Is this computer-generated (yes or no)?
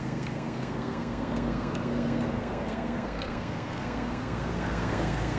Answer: yes